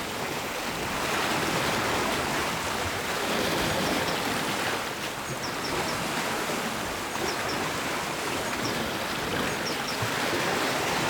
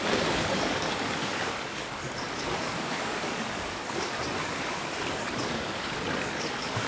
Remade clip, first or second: second